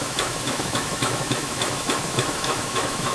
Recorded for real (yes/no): no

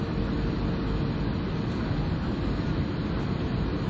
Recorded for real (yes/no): yes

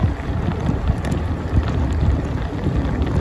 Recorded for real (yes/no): no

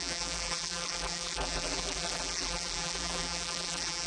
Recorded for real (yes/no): no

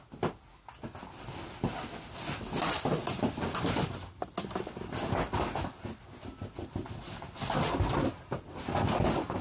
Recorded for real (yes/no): yes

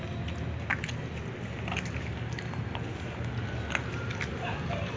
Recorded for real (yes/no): yes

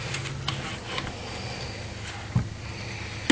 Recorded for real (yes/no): yes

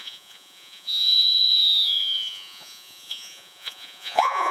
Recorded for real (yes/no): no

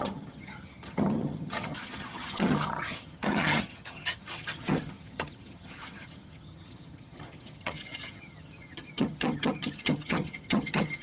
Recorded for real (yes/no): no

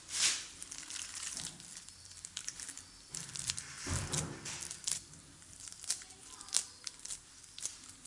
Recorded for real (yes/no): no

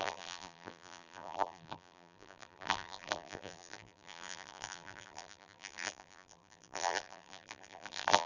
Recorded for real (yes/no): no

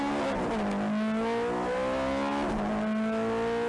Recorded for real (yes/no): yes